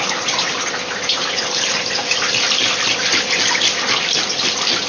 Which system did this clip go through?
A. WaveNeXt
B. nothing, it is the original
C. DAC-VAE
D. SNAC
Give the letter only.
B